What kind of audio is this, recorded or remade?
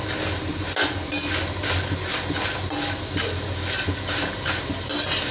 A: recorded